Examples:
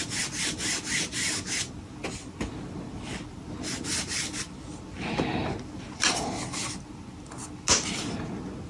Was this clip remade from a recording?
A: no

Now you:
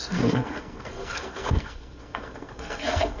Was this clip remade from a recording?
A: yes